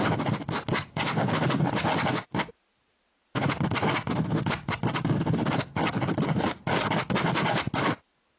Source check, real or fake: real